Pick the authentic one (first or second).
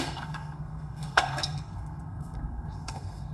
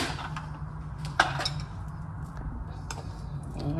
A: second